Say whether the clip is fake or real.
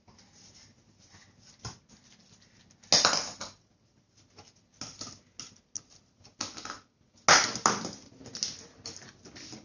real